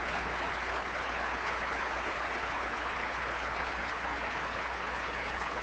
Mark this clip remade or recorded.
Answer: remade